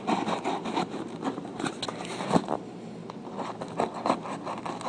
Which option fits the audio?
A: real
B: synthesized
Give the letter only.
A